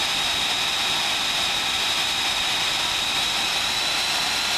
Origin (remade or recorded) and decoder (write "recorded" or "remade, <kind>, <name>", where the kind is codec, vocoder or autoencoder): recorded